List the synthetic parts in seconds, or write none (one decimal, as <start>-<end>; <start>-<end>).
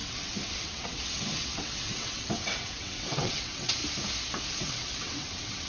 0.0-3.8; 4.5-5.7